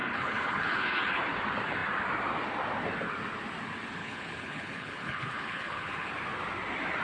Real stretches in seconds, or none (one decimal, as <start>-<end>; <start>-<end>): 1.2-4.0; 6.1-7.0